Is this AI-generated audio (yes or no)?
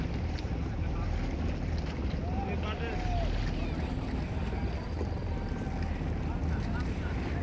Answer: no